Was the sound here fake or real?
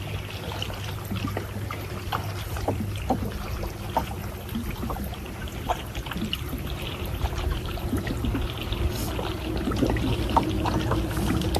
real